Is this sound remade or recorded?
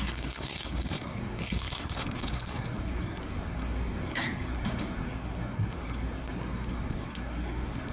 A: remade